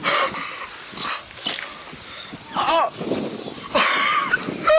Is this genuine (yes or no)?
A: yes